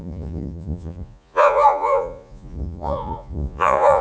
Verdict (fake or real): fake